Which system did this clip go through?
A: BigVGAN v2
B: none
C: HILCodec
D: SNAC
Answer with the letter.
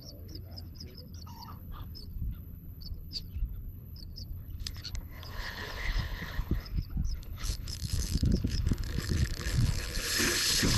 C